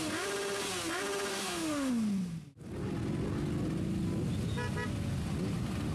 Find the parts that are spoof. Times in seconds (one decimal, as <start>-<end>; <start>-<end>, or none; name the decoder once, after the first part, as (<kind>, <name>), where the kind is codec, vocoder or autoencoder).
1.3-1.9 (autoencoder, DAC-VAE)